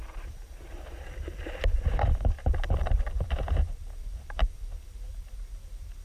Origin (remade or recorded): remade